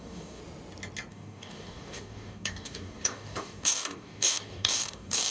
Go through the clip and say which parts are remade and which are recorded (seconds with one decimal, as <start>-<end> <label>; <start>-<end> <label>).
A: 0.0-0.4 remade; 0.4-1.1 recorded; 1.1-5.3 remade